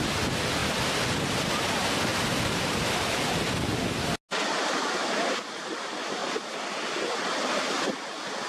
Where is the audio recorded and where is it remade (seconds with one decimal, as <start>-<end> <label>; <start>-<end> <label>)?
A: 0.0-2.1 recorded; 2.1-3.4 remade; 3.4-8.5 recorded